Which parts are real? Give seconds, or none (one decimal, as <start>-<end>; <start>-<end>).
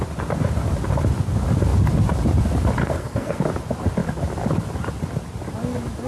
0.0-2.8; 3.4-6.1